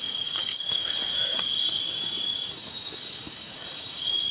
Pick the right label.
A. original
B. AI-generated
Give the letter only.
B